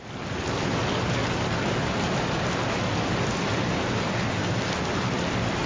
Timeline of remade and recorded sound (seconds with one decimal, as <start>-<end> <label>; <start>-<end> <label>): 0.0-5.7 recorded